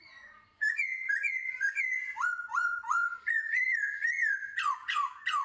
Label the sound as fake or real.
fake